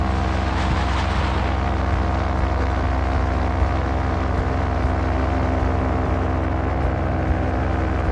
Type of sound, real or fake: real